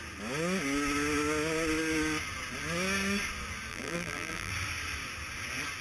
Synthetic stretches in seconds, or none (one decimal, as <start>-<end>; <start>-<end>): 3.7-4.5